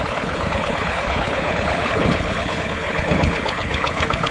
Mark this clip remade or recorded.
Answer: remade